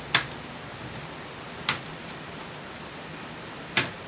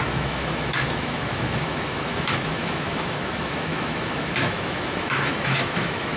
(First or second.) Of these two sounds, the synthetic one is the second